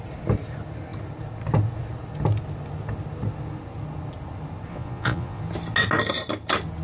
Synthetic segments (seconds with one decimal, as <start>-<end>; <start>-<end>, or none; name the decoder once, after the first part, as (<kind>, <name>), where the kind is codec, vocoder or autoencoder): 4.7-5.4 (vocoder, Vocos)